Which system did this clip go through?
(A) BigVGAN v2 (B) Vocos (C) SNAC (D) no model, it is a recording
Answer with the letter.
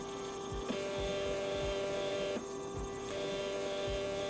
D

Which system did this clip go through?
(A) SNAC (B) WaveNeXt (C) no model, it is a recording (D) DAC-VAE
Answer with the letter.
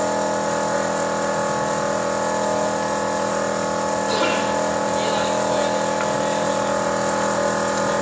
C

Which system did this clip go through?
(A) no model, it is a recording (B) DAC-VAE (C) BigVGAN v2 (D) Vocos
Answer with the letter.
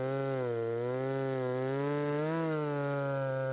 A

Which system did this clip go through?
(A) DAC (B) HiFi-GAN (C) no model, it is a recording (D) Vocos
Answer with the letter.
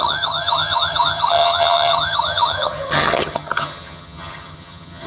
B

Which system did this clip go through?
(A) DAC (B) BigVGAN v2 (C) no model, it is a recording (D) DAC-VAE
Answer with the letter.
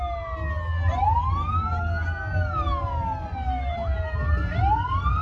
C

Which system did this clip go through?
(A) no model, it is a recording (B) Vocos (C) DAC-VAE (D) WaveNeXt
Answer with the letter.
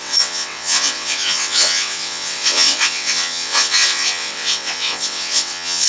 D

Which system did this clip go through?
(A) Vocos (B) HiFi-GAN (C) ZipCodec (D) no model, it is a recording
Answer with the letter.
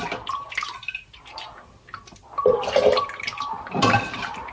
D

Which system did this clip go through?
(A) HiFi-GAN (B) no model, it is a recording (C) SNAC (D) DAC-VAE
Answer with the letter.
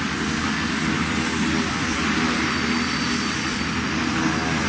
B